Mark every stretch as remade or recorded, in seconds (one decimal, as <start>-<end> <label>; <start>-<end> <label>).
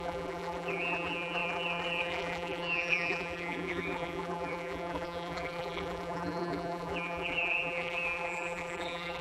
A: 0.0-9.2 remade